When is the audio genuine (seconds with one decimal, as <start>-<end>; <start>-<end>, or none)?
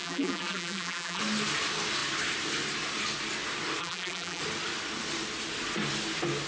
1.2-3.8; 4.4-6.5